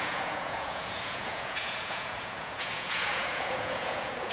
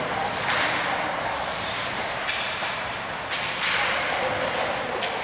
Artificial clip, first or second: first